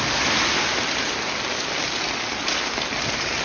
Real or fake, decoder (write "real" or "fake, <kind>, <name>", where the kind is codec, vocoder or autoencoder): real